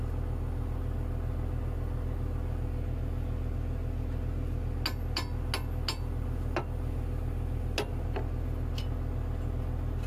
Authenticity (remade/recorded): recorded